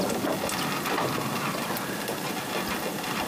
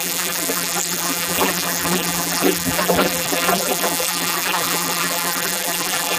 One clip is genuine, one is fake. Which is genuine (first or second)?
first